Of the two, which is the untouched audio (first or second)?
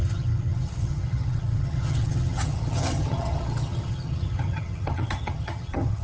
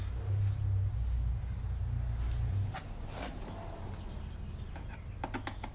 second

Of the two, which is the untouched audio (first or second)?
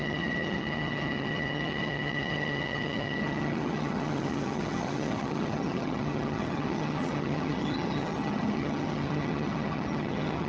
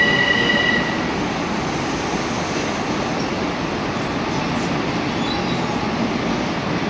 second